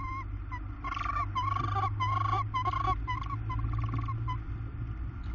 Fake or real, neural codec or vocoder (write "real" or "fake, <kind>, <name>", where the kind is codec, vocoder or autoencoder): real